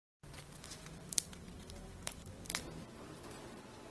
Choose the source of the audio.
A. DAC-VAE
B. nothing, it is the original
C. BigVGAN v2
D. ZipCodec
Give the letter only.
C